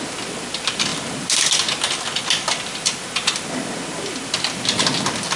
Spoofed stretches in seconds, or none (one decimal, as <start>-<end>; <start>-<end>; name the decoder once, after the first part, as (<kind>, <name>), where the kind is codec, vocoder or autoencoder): none